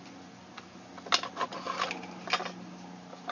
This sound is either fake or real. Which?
real